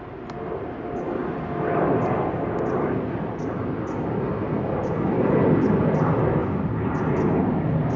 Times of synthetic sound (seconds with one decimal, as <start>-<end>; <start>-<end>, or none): none